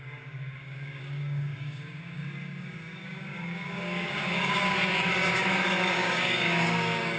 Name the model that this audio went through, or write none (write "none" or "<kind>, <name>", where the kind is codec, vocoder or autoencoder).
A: codec, DAC